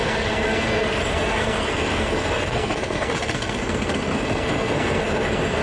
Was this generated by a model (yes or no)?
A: yes